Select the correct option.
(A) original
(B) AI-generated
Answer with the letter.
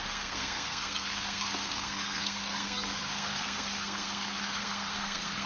B